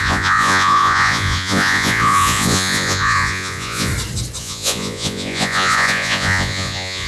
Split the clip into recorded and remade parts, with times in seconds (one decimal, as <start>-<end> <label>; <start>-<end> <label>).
0.0-3.9 remade; 3.9-4.4 recorded; 4.4-7.1 remade